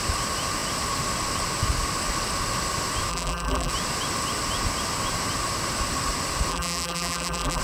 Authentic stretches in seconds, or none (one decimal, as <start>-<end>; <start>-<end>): 0.0-3.1; 3.7-6.5

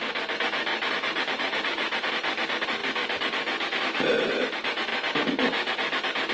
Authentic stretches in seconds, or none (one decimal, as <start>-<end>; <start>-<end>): 0.0-0.7; 2.1-6.3

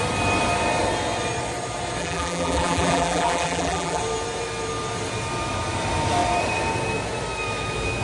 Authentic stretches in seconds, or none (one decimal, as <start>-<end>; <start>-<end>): 0.0-2.0; 4.0-8.0